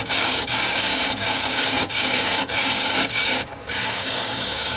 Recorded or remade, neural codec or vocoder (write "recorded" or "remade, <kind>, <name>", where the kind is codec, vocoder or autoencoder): remade, codec, DAC